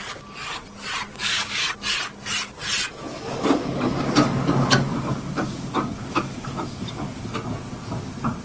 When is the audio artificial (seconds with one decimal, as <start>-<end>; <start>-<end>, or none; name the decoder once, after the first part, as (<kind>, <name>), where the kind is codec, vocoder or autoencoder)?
1.1-1.6 (codec, DAC); 3.1-7.2